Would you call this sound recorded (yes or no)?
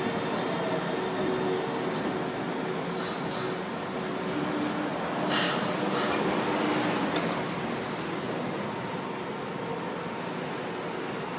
yes